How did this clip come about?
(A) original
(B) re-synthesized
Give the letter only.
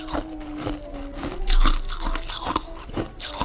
A